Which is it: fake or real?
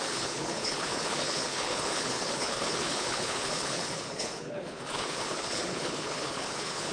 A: fake